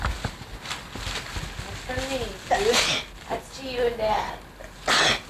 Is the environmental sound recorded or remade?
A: recorded